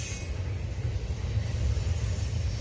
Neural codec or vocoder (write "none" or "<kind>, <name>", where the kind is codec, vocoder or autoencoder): none